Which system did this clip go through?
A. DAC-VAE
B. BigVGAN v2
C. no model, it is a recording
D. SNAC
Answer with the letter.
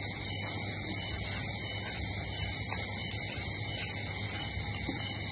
C